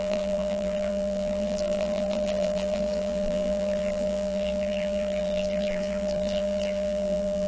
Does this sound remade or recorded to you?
remade